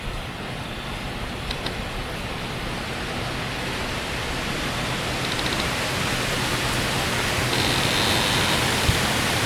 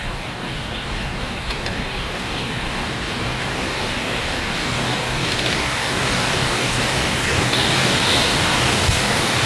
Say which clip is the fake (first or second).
second